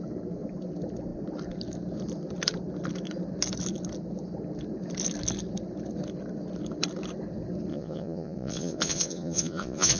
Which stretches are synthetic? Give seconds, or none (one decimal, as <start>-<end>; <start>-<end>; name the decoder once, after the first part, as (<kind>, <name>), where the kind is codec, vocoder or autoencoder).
7.7-10.0 (vocoder, Vocos)